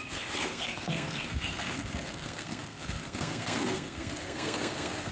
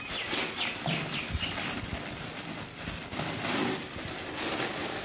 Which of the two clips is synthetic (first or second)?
first